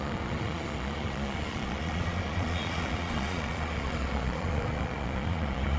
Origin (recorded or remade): remade